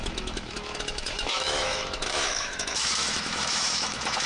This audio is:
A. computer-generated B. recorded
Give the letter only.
A